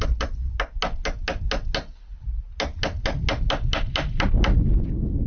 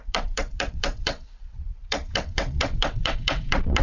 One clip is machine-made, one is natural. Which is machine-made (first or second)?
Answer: second